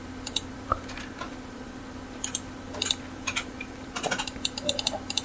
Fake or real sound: fake